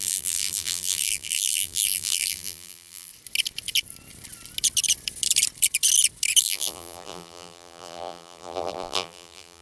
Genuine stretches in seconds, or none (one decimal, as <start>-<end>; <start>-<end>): 3.1-6.4